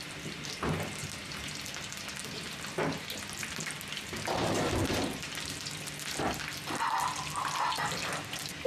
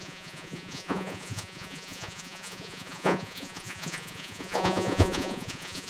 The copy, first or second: second